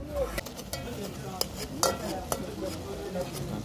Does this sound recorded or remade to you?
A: recorded